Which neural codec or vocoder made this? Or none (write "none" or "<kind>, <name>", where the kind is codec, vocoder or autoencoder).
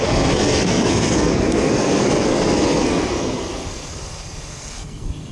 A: codec, SNAC